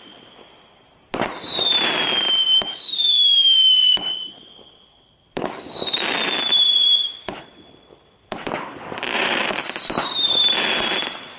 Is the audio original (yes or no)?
yes